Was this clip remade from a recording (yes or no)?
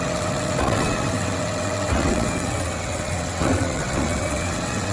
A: yes